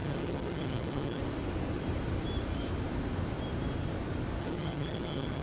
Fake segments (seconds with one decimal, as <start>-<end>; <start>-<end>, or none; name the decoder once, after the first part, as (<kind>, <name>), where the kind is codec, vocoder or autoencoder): 0.0-1.2 (vocoder, HiFi-GAN); 4.4-5.4